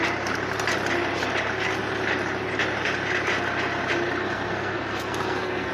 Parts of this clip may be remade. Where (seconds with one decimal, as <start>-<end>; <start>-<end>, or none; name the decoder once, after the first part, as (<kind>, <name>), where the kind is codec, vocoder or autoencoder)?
4.2-5.7 (codec, SNAC)